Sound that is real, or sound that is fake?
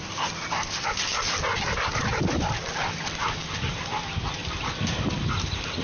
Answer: fake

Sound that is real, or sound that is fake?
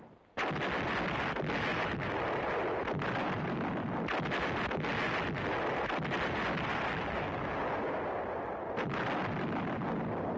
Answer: real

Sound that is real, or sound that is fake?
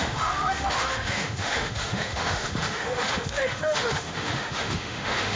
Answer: fake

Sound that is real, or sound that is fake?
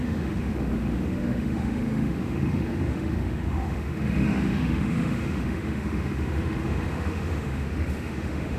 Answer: fake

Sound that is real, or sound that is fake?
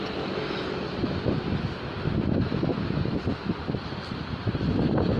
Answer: real